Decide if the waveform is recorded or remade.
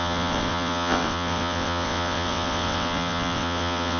remade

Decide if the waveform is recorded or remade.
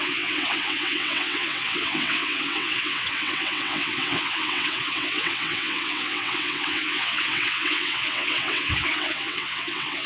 remade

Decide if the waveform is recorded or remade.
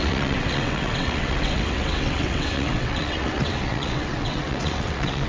remade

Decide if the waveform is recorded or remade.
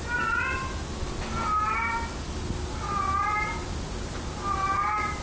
recorded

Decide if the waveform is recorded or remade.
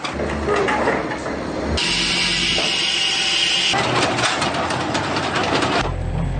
recorded